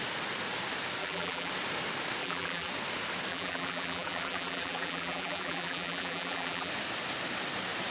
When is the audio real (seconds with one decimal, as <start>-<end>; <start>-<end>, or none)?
0.0-1.0; 1.5-2.2; 2.7-3.3; 6.7-7.9